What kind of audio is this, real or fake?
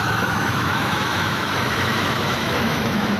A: fake